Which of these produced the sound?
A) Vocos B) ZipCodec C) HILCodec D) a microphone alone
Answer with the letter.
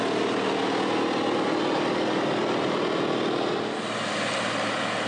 D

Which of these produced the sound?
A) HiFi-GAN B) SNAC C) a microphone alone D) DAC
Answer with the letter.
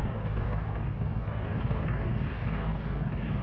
D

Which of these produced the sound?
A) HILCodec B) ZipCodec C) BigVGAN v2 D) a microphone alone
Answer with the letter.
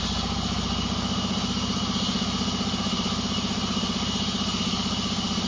D